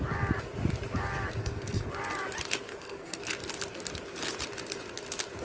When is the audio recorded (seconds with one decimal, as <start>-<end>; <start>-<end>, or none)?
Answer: 0.0-1.4; 1.9-2.7; 3.2-5.4